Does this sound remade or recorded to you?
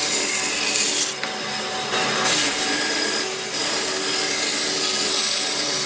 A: recorded